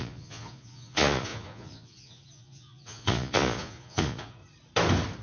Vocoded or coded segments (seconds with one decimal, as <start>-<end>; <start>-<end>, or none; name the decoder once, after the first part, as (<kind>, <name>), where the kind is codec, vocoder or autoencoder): 0.0-4.4 (vocoder, Vocos)